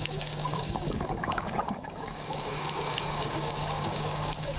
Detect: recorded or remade remade